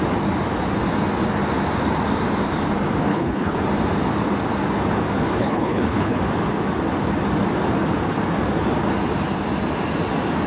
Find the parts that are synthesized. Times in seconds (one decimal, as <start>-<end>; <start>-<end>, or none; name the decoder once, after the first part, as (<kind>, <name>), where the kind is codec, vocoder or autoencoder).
3.1-3.6 (codec, HILCodec); 5.4-6.2